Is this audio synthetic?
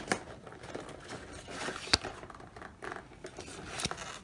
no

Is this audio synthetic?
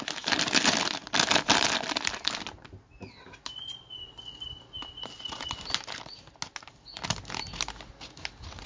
no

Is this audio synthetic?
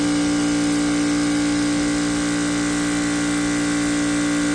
no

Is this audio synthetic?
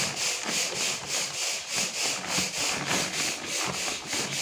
no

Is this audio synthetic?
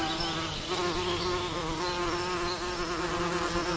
no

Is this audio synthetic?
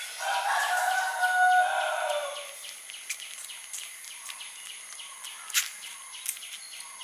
no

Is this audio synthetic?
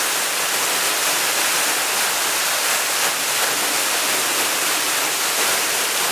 no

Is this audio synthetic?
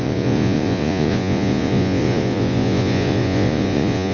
yes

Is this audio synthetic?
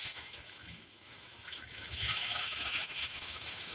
yes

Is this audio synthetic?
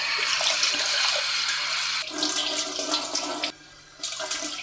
no